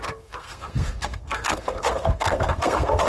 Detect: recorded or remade remade